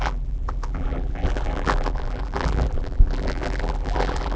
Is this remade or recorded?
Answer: remade